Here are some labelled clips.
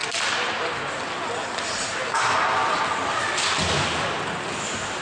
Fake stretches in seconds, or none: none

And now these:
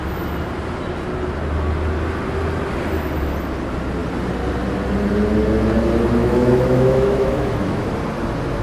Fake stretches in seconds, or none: 6.2-7.9

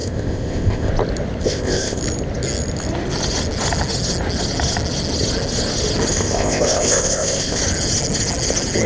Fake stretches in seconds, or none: 0.0-0.9; 1.4-2.0; 6.1-7.6

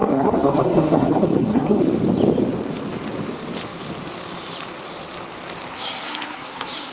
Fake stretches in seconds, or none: 0.0-1.8; 5.7-6.9

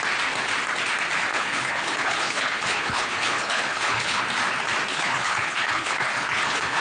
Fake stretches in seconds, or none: 1.3-4.2; 4.9-6.8

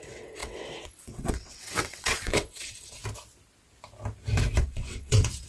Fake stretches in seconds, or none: 0.0-3.0; 4.6-5.5

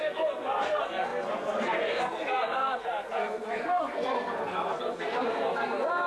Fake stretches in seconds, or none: 0.0-6.1